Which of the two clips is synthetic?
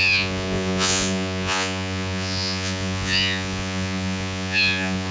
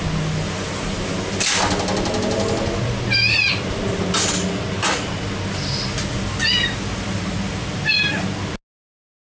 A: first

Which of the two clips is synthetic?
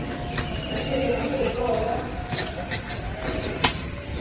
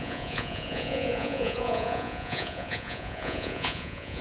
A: second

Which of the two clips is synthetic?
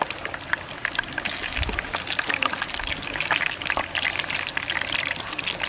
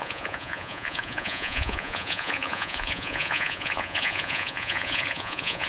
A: second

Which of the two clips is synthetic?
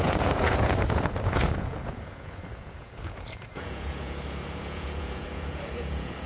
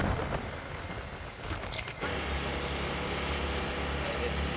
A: first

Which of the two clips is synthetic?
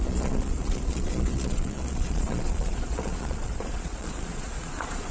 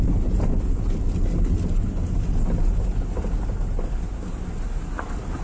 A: first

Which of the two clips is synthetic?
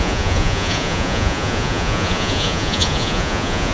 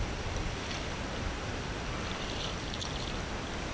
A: first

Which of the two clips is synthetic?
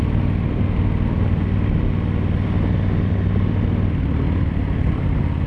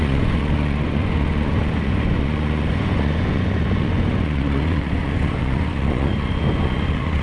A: second